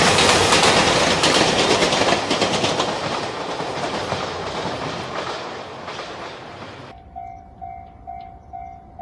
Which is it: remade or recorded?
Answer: recorded